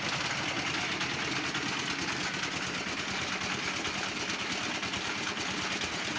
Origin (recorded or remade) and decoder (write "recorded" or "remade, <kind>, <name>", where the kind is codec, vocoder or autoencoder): recorded